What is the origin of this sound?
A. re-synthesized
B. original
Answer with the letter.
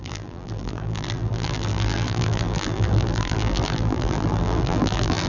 A